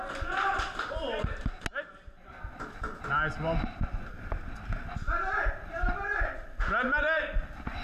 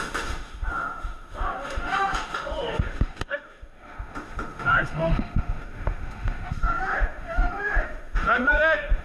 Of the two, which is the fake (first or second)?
second